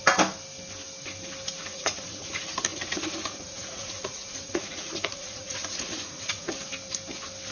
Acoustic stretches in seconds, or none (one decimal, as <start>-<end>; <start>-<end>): 0.0-1.7; 2.3-2.7; 6.5-7.5